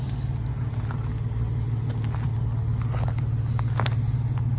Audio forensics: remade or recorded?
recorded